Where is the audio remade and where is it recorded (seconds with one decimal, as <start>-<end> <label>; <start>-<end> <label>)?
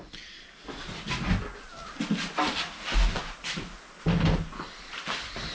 0.0-5.5 recorded